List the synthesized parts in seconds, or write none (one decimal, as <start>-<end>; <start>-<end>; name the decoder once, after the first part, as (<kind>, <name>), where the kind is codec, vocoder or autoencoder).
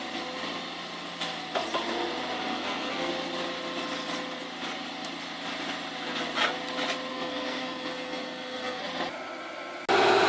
2.5-3.1 (codec, SNAC); 7.1-8.8